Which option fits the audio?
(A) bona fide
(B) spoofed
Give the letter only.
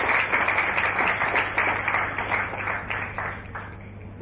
A